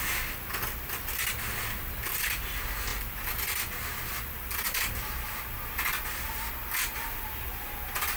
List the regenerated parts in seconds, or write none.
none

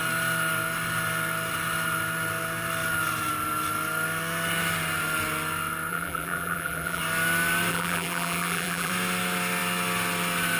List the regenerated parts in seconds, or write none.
5.9-7.0 (vocoder, BigVGAN v2); 7.7-8.9

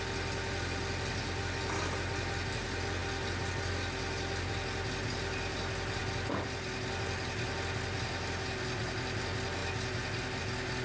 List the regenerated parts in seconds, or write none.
none

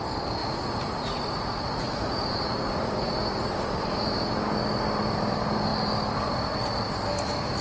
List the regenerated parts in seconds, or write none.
0.4-4.3 (vocoder, Vocos)

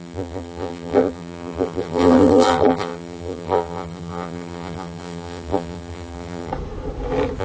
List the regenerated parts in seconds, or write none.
0.0-6.5 (vocoder, BigVGAN v2)

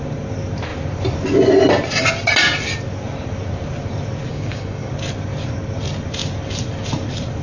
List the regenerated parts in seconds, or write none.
4.3-4.9 (codec, DAC)

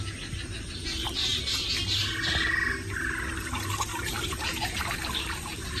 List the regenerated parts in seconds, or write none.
3.9-5.8 (vocoder, BigVGAN v2)